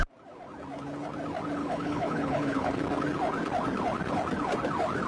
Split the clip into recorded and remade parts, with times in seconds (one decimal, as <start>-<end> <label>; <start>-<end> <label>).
0.0-1.6 recorded; 1.6-2.8 remade; 2.8-5.1 recorded